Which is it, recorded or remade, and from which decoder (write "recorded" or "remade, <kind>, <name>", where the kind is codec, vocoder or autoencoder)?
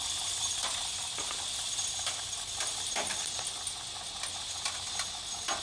recorded